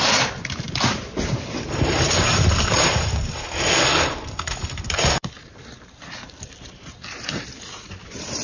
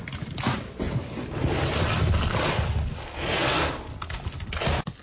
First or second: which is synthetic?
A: first